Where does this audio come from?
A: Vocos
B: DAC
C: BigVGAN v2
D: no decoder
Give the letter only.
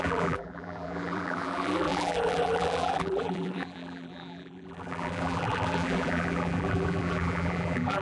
C